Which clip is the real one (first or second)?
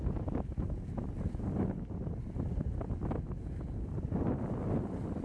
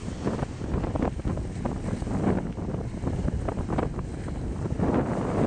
first